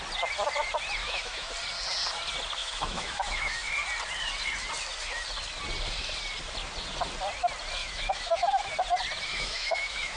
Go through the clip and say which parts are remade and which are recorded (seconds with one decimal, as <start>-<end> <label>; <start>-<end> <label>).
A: 0.0-1.0 recorded; 1.0-1.5 remade; 1.5-2.6 recorded; 2.6-3.7 remade; 3.7-7.8 recorded; 7.8-8.6 remade; 8.6-9.3 recorded; 9.3-10.2 remade

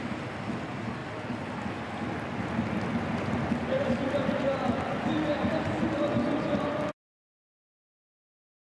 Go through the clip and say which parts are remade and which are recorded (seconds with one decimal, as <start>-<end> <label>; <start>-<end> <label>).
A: 0.0-8.7 recorded